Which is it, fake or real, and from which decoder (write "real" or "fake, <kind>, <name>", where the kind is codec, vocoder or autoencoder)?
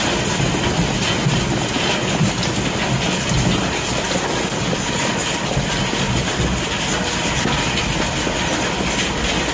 real